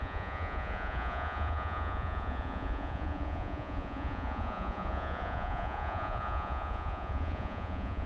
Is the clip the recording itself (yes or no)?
no